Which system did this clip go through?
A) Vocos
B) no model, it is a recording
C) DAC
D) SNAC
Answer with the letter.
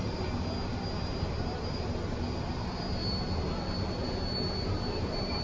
B